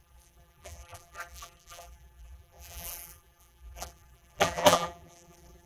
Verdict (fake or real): fake